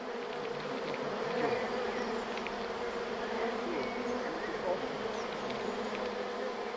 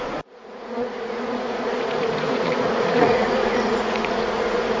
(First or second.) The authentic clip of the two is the first